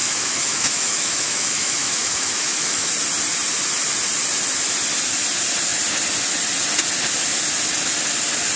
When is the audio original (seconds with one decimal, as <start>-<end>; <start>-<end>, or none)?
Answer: 2.9-8.6